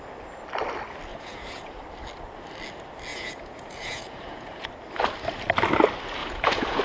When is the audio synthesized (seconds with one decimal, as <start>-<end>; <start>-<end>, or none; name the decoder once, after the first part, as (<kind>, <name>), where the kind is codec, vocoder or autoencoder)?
1.1-1.8 (vocoder, Vocos); 3.1-4.7; 6.2-6.8